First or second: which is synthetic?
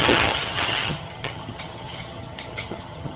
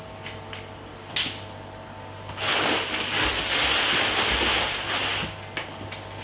first